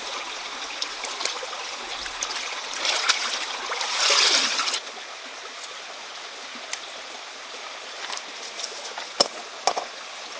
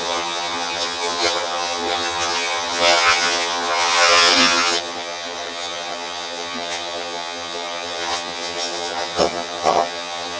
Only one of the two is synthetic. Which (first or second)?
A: second